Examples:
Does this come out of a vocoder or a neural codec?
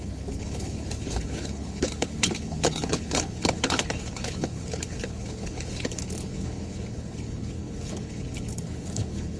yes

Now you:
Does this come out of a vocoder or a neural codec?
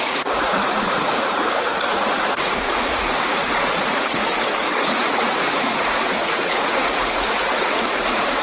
yes